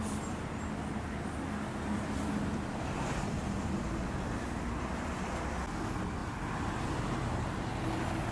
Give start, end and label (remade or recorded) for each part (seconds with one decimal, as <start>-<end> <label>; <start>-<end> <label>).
0.0-8.3 recorded